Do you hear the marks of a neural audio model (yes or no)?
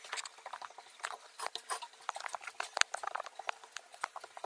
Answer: no